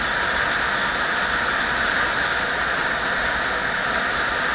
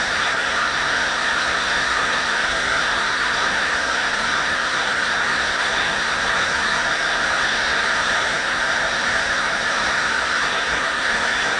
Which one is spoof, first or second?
second